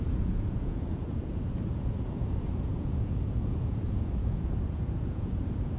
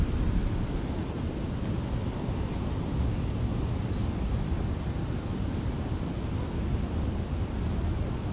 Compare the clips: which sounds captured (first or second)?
second